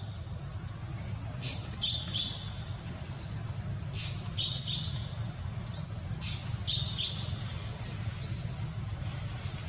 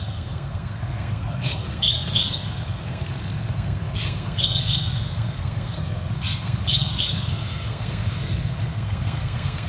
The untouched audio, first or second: first